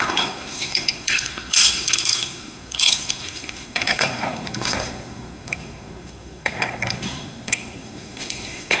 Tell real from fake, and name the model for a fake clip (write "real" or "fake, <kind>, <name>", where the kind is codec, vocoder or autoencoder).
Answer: fake, codec, SNAC